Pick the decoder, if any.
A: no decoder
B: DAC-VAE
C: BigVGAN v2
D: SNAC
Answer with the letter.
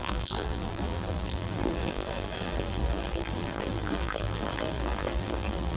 C